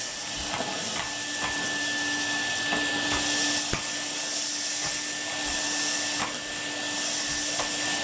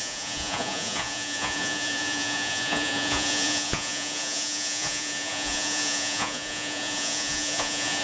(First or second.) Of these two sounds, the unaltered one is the first